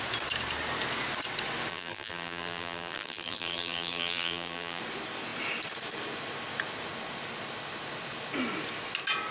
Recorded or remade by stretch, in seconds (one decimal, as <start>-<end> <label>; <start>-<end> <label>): 0.0-1.7 recorded; 1.7-4.8 remade; 4.8-9.3 recorded